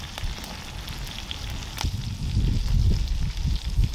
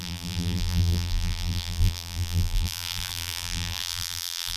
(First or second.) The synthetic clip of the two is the second